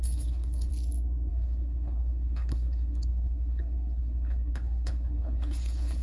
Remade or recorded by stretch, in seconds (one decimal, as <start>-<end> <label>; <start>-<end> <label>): 0.0-0.7 remade; 0.7-1.3 recorded; 1.3-6.0 remade